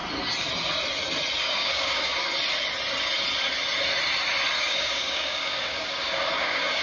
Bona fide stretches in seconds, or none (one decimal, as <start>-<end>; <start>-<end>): 0.0-1.4; 2.2-4.6